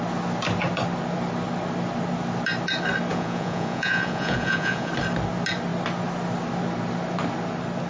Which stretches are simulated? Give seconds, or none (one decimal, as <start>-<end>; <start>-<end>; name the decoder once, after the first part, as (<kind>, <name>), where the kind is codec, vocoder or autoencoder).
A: 3.1-4.9 (vocoder, Vocos)